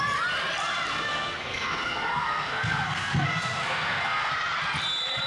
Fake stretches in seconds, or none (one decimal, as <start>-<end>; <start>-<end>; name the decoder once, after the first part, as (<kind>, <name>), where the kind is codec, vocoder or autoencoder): 1.1-4.3 (codec, SNAC)